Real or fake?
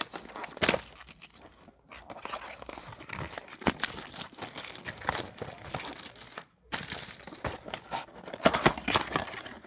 real